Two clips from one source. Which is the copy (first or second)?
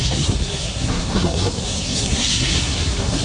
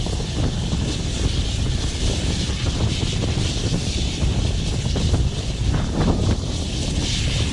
first